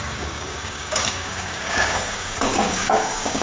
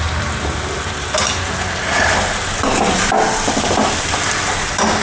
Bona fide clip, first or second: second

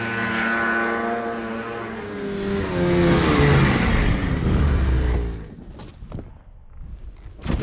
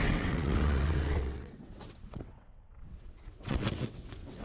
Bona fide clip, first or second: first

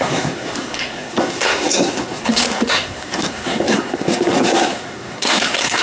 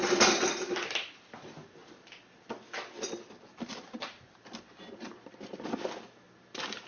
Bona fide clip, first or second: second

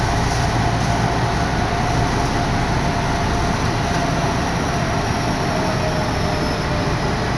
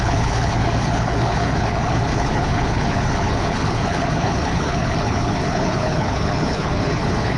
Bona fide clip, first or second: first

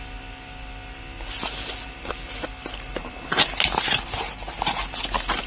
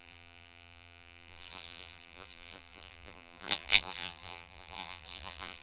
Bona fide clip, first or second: first